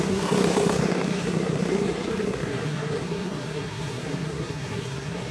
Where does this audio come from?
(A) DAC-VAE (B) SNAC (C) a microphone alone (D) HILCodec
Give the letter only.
B